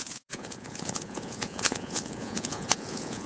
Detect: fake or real fake